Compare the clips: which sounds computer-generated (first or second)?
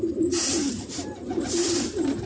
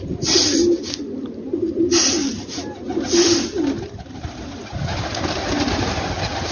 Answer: first